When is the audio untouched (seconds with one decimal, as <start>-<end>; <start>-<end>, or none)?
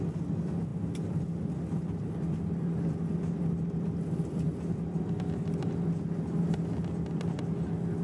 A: 0.0-8.0